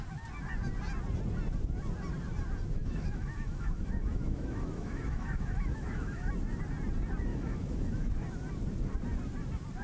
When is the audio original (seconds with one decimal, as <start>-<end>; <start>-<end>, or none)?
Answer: 0.0-2.8; 6.3-7.3; 8.1-9.8

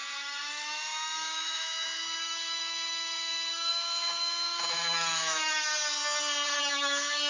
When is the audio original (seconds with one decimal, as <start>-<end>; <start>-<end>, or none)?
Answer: 5.7-6.6

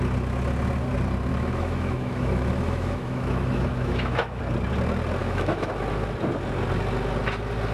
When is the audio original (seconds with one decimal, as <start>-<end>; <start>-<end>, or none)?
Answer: 0.0-1.3; 4.4-5.2; 5.7-7.7

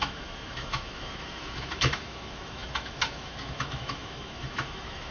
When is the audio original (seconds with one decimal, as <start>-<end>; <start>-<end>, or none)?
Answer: none

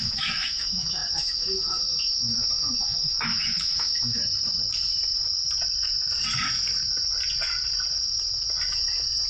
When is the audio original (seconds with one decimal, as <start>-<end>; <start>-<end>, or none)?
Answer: 4.2-9.3

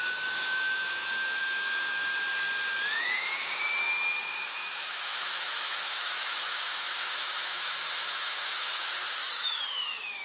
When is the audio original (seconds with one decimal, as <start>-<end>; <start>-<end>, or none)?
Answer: 2.3-3.0